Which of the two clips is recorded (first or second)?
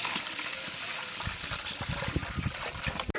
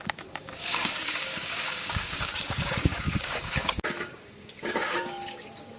first